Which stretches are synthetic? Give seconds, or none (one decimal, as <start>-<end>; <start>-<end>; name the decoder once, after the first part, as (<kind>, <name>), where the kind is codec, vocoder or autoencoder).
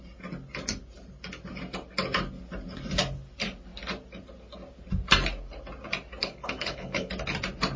6.2-7.1 (codec, HILCodec)